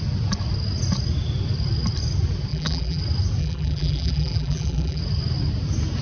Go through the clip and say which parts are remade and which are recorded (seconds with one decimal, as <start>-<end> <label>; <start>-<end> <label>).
0.0-2.5 recorded; 2.5-3.0 remade; 3.0-3.4 recorded; 3.4-5.0 remade; 5.0-6.0 recorded